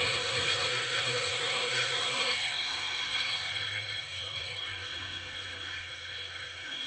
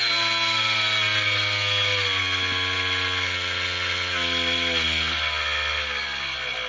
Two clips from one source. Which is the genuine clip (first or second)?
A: second